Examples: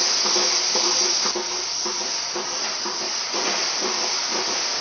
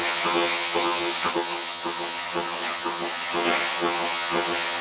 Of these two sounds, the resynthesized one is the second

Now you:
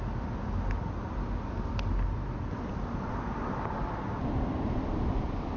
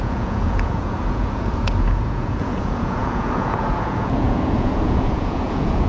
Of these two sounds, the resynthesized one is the second